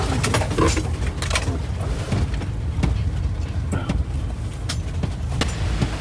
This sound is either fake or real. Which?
real